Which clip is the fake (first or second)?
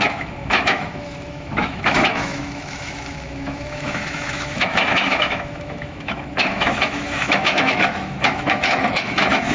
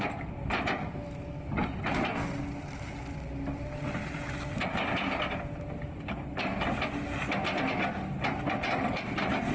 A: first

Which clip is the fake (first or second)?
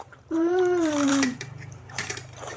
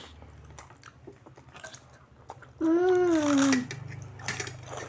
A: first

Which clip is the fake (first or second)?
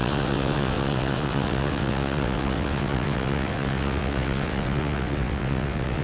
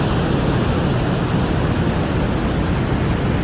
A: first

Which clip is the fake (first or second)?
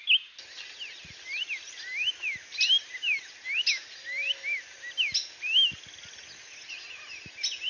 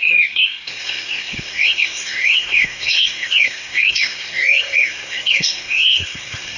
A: second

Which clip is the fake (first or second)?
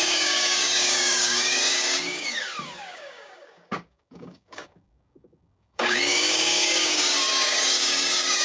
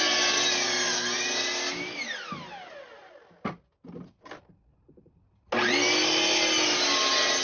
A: first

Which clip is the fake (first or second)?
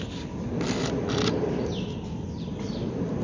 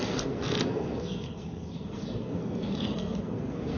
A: second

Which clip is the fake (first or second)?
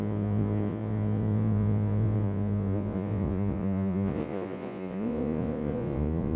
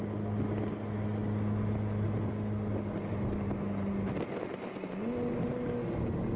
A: first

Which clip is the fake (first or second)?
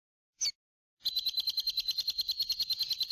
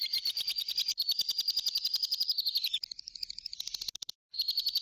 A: second